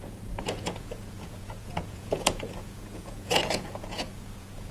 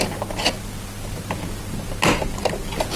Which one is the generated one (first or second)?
first